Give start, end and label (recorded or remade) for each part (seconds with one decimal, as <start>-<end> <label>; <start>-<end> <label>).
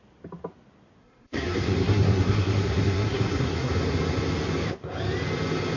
0.0-1.0 recorded; 1.0-3.7 remade; 3.7-5.8 recorded